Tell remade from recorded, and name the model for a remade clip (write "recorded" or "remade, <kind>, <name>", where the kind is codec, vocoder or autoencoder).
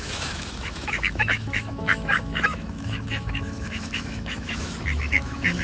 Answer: remade, autoencoder, DAC-VAE